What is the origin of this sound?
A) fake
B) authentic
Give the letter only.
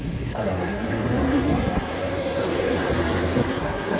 A